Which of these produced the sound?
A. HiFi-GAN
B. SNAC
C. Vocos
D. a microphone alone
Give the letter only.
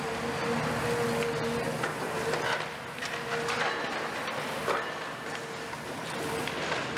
D